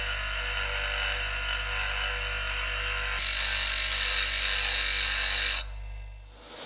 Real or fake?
real